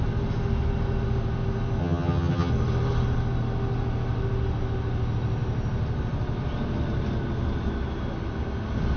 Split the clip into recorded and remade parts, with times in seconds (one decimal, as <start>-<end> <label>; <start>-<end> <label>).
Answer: 0.0-1.8 recorded; 1.8-2.5 remade; 2.5-9.0 recorded